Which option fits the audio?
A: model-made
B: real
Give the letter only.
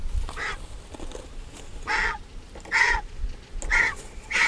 B